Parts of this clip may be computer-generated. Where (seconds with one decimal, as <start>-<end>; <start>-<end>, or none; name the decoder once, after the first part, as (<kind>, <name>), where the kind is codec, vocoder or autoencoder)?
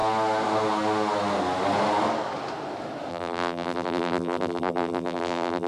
3.1-5.7 (vocoder, BigVGAN v2)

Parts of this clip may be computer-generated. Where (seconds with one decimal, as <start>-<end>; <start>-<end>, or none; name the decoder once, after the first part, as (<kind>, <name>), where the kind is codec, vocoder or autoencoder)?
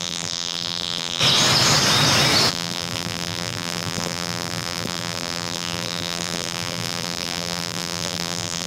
0.0-1.2 (vocoder, BigVGAN v2); 2.5-8.7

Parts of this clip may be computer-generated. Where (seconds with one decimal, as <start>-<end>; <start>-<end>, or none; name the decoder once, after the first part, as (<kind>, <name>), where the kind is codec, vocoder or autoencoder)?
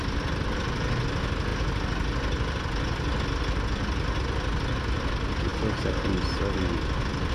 none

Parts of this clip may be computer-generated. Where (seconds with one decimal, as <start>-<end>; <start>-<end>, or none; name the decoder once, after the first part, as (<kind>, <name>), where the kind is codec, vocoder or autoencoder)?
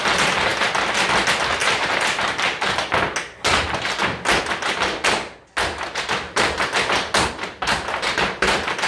1.6-2.2 (vocoder, BigVGAN v2)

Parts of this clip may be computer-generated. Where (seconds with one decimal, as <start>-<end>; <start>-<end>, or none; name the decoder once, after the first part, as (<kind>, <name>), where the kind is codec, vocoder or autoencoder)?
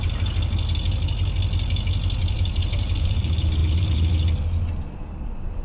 2.2-3.2 (vocoder, BigVGAN v2); 3.6-4.1